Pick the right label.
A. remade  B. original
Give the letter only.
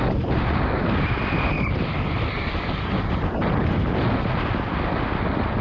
B